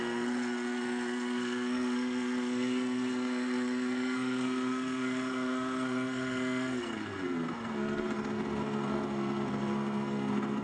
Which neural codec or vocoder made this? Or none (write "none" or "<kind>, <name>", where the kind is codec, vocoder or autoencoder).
codec, SNAC